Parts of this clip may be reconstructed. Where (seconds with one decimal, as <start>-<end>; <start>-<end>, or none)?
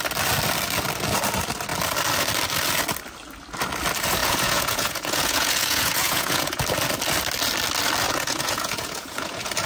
4.2-6.6; 8.1-9.7